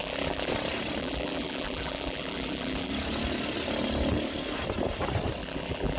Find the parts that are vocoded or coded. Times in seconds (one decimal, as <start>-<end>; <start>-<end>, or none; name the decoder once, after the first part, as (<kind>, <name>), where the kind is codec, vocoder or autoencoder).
0.0-0.5 (vocoder, BigVGAN v2); 1.0-2.9; 5.4-6.0